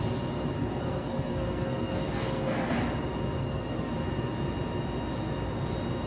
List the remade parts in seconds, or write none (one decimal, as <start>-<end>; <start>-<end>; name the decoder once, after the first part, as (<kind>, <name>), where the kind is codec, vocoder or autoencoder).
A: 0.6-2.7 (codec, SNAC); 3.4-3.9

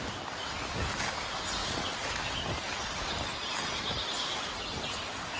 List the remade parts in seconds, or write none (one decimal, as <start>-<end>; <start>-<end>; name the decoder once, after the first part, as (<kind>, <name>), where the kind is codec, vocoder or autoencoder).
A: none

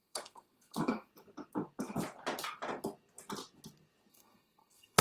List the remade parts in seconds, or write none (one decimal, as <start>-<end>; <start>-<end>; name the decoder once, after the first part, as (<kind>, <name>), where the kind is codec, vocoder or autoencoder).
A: 0.0-1.1 (codec, SNAC); 4.1-5.0